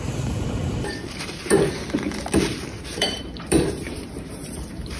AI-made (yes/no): yes